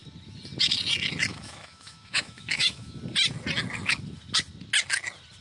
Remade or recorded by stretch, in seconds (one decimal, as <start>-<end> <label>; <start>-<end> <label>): 0.0-1.3 recorded; 1.3-3.0 remade; 3.0-5.4 recorded